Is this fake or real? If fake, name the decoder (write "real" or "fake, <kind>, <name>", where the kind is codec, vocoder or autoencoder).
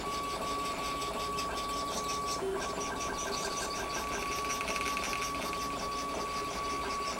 real